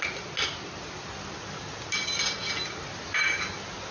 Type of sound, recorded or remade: recorded